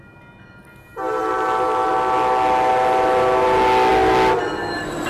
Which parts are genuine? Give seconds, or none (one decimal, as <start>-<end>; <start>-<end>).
0.0-5.1